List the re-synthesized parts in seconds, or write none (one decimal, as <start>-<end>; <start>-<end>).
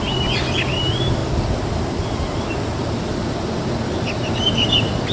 none